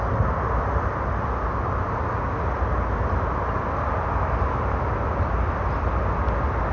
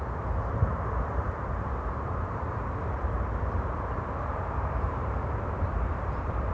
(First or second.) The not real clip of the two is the second